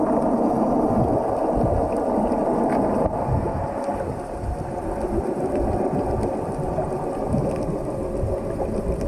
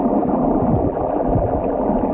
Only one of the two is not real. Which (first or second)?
second